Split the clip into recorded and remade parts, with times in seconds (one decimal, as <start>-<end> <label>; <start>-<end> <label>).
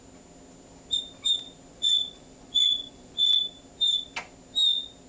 0.0-1.7 recorded; 1.7-3.4 remade; 3.4-5.1 recorded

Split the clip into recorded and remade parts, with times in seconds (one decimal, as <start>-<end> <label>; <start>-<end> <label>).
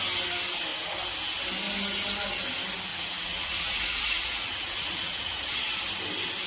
0.0-2.9 recorded; 2.9-5.8 remade; 5.8-6.5 recorded